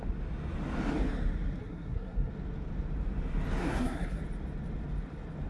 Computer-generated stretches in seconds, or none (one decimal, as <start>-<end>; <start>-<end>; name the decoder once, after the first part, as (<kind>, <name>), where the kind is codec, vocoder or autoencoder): 1.6-2.3 (codec, SNAC); 3.6-4.2